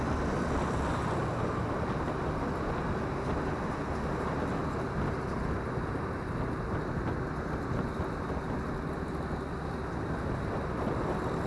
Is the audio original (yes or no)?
yes